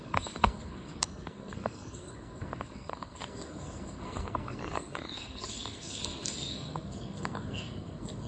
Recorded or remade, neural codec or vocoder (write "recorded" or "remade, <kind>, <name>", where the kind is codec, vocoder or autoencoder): remade, codec, SNAC